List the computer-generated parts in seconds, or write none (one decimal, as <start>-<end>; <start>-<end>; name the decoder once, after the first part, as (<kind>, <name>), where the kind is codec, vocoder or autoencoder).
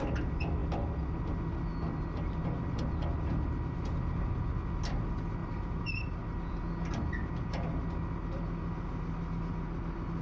5.4-6.2 (vocoder, BigVGAN v2)